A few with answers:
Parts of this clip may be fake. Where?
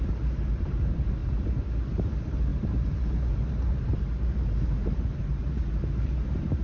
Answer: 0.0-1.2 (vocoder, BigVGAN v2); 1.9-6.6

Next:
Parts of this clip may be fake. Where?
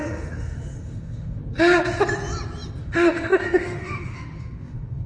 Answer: 0.0-1.4 (autoencoder, DAC-VAE); 2.8-5.1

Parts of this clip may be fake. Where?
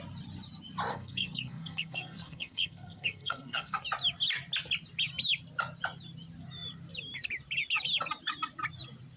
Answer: 0.9-3.8 (codec, SNAC)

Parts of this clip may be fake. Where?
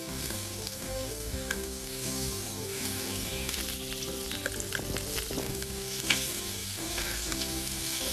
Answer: 0.0-3.6 (codec, DAC); 5.4-8.1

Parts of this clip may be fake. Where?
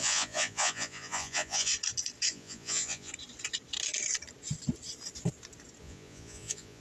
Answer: 0.0-1.7 (vocoder, Vocos); 2.3-3.1; 5.8-6.8